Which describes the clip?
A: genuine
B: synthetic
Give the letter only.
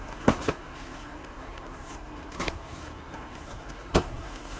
B